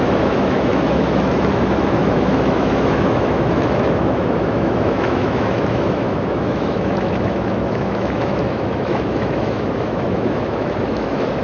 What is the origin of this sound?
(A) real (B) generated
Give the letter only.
B